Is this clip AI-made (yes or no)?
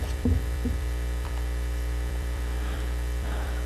yes